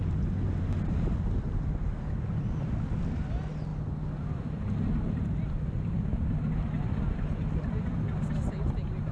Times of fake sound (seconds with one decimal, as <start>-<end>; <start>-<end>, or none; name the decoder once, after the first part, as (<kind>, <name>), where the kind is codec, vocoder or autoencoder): none